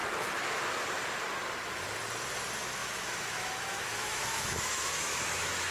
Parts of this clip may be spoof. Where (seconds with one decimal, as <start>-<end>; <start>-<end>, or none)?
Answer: 0.0-0.6; 2.8-5.7